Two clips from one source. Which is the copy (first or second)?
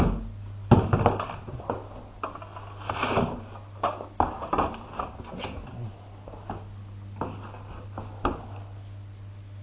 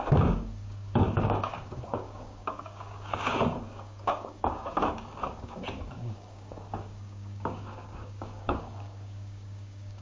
second